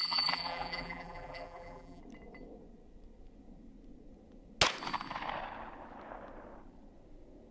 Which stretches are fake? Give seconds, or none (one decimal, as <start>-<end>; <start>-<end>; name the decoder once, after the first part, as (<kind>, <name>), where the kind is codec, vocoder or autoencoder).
0.0-2.0 (vocoder, BigVGAN v2)